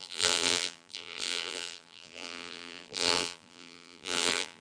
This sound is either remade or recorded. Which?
remade